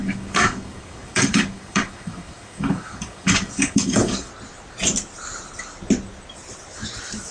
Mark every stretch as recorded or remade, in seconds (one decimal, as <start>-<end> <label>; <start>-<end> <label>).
0.0-4.3 remade; 4.3-7.3 recorded